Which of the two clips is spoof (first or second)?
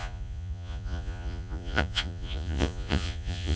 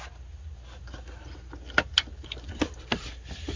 first